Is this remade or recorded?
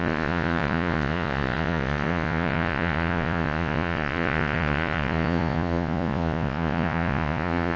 remade